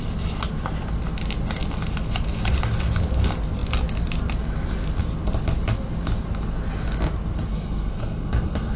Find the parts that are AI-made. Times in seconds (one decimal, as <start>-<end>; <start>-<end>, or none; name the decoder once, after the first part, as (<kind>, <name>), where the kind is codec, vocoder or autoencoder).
7.5-8.8 (codec, SNAC)